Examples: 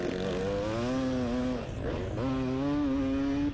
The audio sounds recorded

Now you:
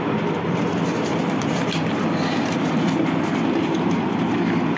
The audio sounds recorded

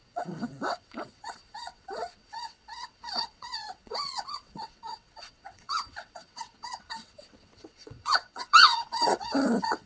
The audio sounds remade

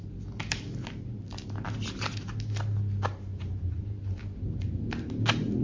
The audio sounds recorded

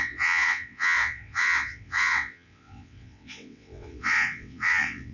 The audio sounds remade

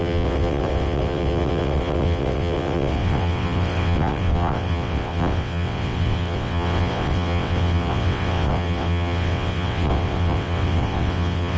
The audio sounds remade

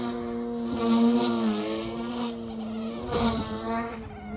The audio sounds recorded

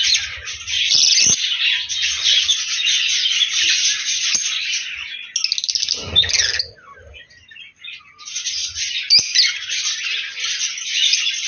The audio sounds recorded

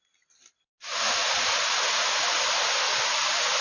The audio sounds recorded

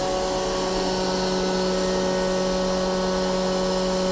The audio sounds recorded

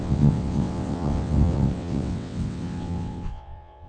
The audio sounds remade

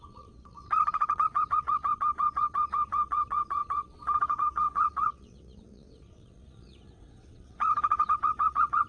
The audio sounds remade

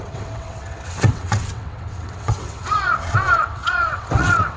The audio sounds remade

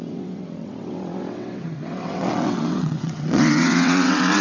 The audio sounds remade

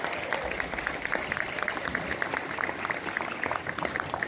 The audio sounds recorded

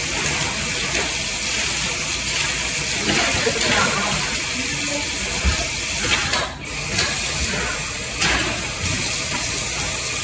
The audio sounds recorded